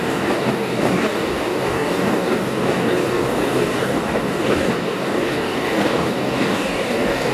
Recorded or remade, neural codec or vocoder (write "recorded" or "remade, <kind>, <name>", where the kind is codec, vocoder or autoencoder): remade, codec, DAC